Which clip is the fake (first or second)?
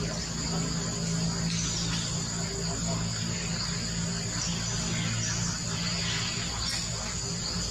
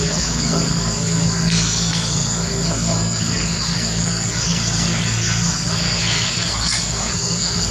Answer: second